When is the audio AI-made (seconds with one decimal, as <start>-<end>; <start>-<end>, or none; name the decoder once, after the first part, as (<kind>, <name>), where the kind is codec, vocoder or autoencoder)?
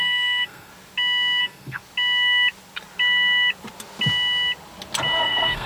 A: 0.0-0.7 (codec, SNAC); 1.4-1.8; 5.2-5.7